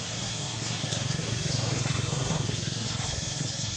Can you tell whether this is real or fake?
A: fake